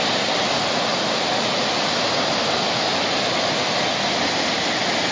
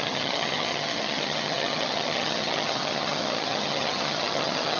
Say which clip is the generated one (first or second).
second